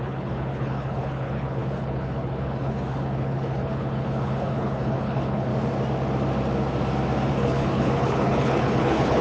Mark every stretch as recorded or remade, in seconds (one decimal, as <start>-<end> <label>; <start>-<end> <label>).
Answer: 0.0-5.5 remade; 5.5-7.3 recorded; 7.3-9.2 remade